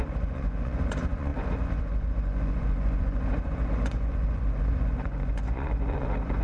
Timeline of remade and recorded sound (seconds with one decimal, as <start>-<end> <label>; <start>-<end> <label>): 0.0-6.4 remade